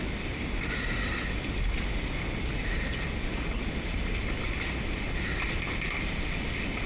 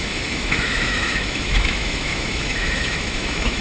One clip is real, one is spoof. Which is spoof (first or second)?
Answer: second